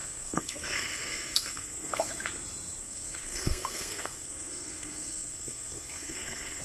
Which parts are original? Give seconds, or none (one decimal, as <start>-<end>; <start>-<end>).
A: 2.1-2.8